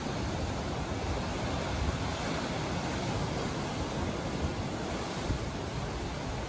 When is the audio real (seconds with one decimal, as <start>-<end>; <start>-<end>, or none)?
0.0-6.5